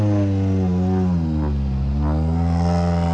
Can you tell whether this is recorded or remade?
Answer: recorded